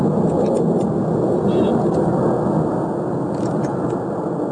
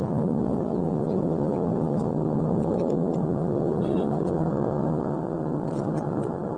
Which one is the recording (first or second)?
first